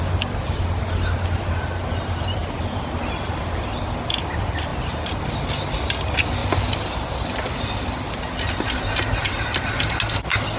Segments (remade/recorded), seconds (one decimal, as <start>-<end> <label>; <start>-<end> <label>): 0.0-6.4 recorded; 6.4-8.2 remade; 8.2-10.6 recorded